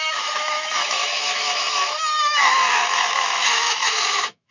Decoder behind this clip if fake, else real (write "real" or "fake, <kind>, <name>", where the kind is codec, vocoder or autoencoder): fake, autoencoder, DAC-VAE